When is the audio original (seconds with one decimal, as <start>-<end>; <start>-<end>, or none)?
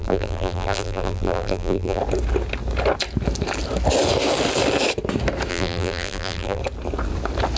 2.0-5.5; 6.6-7.6